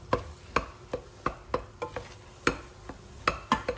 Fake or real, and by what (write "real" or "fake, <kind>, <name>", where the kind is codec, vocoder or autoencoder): real